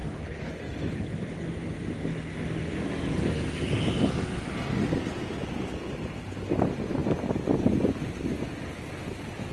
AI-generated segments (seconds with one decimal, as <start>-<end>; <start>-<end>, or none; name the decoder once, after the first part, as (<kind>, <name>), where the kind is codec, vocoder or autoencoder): 0.0-0.6 (codec, HILCodec)